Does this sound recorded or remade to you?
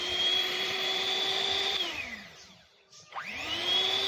remade